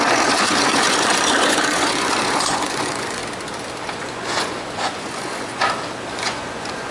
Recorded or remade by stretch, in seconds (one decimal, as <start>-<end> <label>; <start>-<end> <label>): 0.0-3.2 remade; 3.2-3.9 recorded; 3.9-5.6 remade; 5.6-6.1 recorded; 6.1-6.9 remade